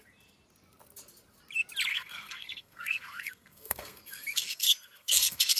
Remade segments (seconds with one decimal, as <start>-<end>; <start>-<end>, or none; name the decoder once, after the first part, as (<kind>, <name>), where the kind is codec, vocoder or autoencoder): 1.9-5.6 (codec, SNAC)